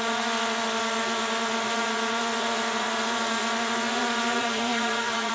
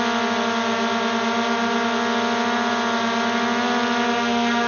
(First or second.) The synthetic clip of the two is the first